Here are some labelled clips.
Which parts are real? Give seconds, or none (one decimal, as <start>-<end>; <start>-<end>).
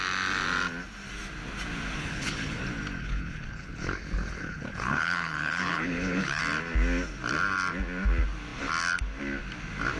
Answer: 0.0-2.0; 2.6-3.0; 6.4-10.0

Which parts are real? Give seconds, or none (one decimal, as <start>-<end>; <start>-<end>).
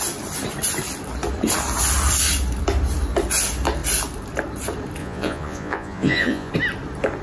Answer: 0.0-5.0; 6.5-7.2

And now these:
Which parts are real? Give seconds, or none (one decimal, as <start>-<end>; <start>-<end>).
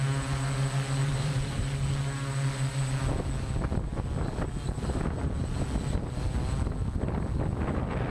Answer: 0.0-1.0; 1.6-8.1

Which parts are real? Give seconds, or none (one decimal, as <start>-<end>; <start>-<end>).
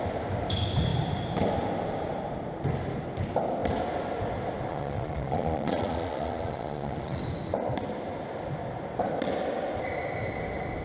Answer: 0.0-4.7; 7.2-10.8